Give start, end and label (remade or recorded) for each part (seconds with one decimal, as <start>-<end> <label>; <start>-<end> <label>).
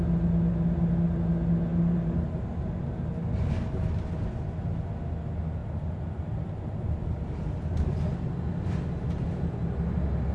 0.0-1.7 recorded; 1.7-2.3 remade; 2.3-5.6 recorded; 5.6-6.2 remade; 6.2-10.3 recorded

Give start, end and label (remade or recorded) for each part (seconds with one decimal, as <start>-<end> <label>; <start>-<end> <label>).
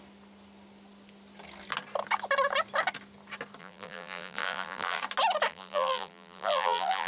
0.0-3.6 recorded; 3.6-5.0 remade; 5.0-5.5 recorded; 5.5-7.1 remade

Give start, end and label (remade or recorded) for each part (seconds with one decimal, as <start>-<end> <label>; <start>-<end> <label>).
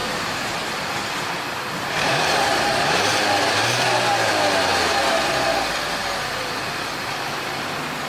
0.0-4.3 remade; 4.3-8.1 recorded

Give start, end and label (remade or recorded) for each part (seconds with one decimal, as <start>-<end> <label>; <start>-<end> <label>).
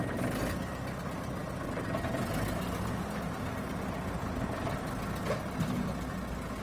0.0-6.6 recorded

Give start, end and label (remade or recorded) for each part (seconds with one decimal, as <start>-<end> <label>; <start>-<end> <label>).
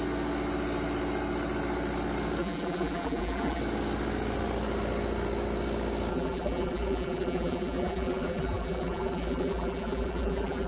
0.0-2.4 recorded; 2.4-3.6 remade; 3.6-6.1 recorded; 6.1-10.7 remade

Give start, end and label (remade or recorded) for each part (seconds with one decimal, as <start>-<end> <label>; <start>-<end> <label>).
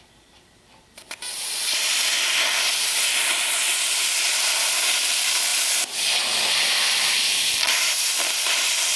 0.0-5.5 remade; 5.5-6.5 recorded; 6.5-9.0 remade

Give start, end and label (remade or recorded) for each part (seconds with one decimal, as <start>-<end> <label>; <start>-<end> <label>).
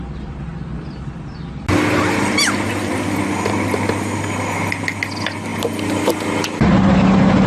0.0-7.5 recorded